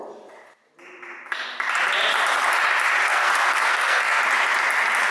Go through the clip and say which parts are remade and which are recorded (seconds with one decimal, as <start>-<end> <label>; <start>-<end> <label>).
0.0-3.0 recorded; 3.0-4.2 remade; 4.2-5.1 recorded